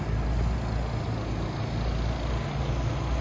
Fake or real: real